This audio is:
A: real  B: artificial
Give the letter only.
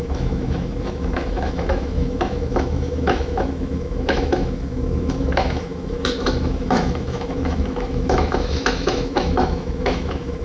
B